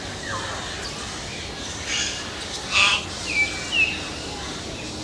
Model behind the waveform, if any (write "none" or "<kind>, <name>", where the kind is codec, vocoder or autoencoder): none